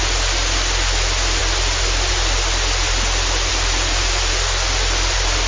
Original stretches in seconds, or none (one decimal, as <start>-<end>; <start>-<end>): 0.0-5.5